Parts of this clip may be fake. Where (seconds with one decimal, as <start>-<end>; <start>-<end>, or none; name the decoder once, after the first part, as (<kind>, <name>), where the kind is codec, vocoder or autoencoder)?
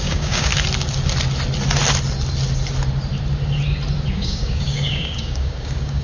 0.0-0.5 (codec, DAC); 4.1-6.0